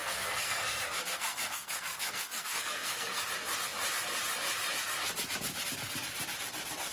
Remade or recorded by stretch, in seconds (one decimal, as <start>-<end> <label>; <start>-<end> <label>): 0.0-3.2 remade; 3.2-6.9 recorded